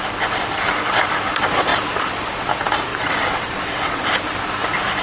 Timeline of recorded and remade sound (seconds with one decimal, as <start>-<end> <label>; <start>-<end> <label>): 0.0-2.9 recorded; 2.9-4.0 remade; 4.0-5.0 recorded